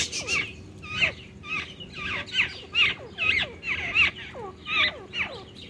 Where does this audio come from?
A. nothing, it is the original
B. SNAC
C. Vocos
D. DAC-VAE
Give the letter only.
A